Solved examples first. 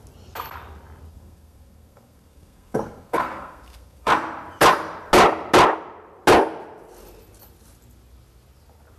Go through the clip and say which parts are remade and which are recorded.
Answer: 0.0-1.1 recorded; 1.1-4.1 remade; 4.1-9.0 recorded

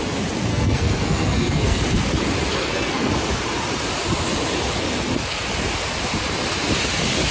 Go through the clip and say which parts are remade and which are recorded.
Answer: 0.0-0.5 recorded; 0.5-1.8 remade; 1.8-2.5 recorded; 2.5-3.1 remade; 3.1-7.3 recorded